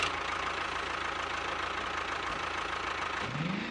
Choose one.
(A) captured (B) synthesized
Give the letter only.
A